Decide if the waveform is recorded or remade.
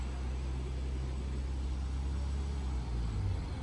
recorded